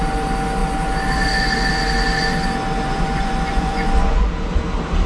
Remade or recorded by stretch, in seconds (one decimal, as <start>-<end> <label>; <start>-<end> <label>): 0.0-2.9 recorded; 2.9-4.3 remade; 4.3-5.1 recorded